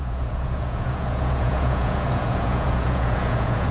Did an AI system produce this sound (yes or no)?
yes